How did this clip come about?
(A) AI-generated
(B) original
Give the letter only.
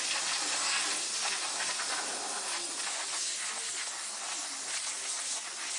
B